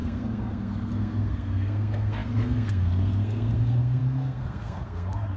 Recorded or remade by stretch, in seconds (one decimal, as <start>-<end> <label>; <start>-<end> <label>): 0.0-5.4 remade